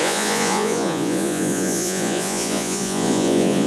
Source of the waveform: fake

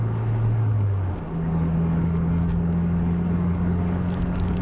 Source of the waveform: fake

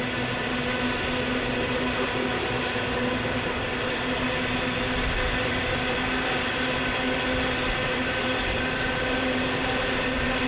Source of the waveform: real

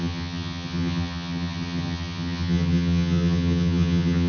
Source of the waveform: fake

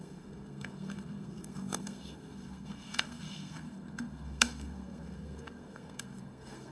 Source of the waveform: fake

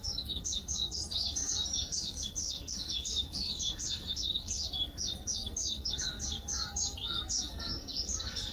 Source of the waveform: fake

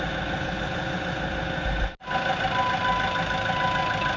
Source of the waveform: real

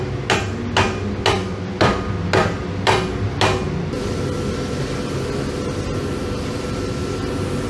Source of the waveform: real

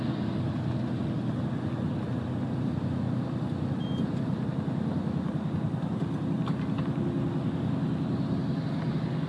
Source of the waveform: real